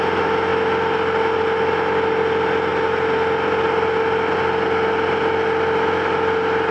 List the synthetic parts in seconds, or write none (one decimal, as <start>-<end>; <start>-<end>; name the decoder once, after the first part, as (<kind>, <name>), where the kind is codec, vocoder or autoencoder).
none

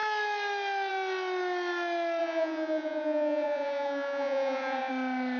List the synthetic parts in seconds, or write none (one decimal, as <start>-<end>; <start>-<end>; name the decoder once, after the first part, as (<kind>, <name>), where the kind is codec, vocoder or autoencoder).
2.2-4.9 (vocoder, Vocos)

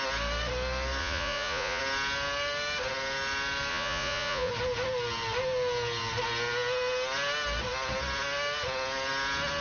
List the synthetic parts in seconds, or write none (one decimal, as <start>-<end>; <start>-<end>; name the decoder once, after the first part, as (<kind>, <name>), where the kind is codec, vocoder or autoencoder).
1.0-1.8 (vocoder, Vocos); 3.7-4.5

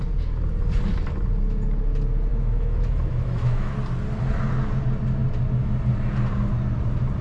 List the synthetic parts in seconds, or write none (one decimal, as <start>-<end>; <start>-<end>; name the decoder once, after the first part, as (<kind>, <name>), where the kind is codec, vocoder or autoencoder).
2.3-3.7 (autoencoder, DAC-VAE)

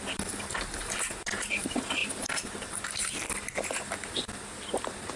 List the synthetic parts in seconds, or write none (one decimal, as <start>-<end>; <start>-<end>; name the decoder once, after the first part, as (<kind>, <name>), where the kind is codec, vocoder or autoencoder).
none

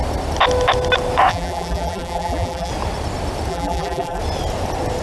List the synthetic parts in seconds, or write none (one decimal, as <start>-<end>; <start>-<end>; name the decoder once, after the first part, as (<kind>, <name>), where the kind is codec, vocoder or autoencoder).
1.3-2.7 (vocoder, BigVGAN v2); 3.5-4.2

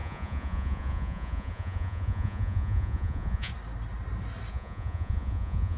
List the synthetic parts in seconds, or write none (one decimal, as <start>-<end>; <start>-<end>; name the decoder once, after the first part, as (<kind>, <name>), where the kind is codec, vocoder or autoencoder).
0.0-3.5 (vocoder, Vocos); 4.5-5.8

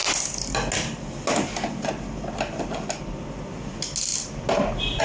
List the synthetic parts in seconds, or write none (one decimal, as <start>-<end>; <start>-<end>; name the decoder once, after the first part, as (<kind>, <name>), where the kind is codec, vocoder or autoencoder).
none